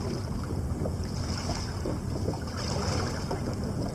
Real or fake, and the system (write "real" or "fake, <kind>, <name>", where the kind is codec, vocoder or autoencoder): real